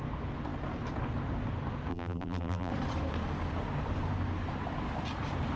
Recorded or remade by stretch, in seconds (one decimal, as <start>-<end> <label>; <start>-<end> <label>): 0.0-1.9 recorded; 1.9-2.7 remade; 2.7-5.6 recorded